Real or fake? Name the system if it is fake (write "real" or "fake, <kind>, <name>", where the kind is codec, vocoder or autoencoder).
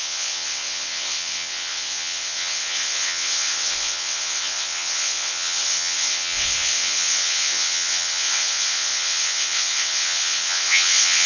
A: fake, vocoder, WaveNeXt